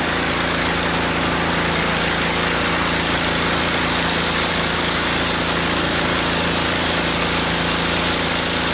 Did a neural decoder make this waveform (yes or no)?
no